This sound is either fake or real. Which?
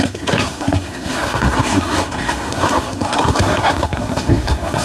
fake